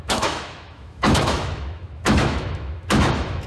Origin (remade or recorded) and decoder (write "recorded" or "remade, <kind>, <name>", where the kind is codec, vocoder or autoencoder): remade, autoencoder, DAC-VAE